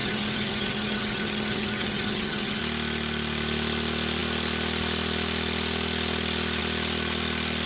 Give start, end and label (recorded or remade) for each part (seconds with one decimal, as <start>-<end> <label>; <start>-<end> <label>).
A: 0.0-2.6 remade; 2.6-7.7 recorded